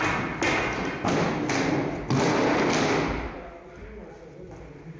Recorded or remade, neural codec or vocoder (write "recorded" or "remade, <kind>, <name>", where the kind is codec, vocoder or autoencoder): recorded